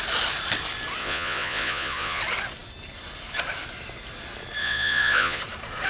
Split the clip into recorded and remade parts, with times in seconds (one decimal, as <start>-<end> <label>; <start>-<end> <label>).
0.0-1.0 recorded; 1.0-2.2 remade; 2.2-4.6 recorded; 4.6-5.4 remade; 5.4-5.9 recorded

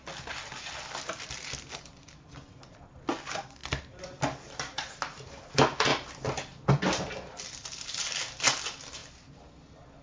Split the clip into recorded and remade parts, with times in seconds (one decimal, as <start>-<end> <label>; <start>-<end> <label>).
0.0-10.0 recorded

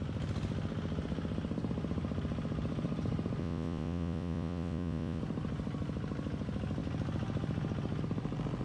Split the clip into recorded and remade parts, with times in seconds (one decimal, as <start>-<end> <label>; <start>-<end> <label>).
0.0-3.4 recorded; 3.4-5.2 remade; 5.2-8.6 recorded

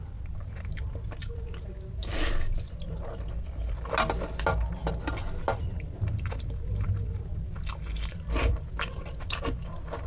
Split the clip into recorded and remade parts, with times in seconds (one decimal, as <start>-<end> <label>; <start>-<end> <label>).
0.0-10.1 remade

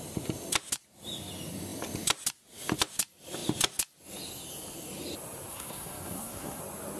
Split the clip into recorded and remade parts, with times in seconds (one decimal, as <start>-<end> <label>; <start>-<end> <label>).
0.0-5.5 recorded; 5.5-6.6 remade; 6.6-7.0 recorded

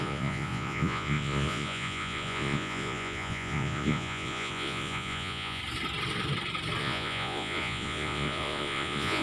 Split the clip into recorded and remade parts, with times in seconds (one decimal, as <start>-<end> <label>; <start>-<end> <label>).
0.0-5.6 remade; 5.6-6.8 recorded; 6.8-9.2 remade

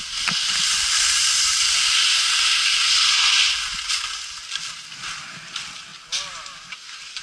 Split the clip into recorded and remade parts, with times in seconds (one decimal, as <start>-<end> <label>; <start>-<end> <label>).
0.0-7.2 recorded

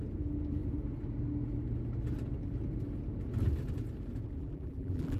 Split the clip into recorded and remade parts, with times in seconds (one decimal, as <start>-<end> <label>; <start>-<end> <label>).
0.0-4.4 recorded; 4.4-5.2 remade